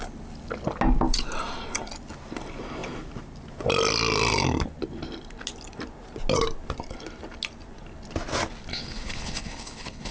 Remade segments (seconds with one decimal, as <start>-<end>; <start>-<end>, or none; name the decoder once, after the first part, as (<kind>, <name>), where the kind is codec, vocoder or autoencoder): 8.7-10.1 (codec, HILCodec)